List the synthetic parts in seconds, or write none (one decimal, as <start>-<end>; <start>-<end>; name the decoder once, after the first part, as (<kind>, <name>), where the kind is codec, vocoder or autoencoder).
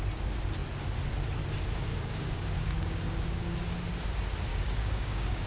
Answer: 1.9-3.6 (codec, DAC); 4.5-5.5